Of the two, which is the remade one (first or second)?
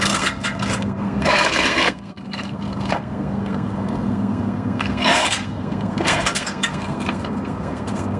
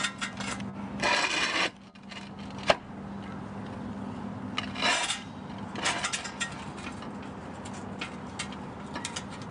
first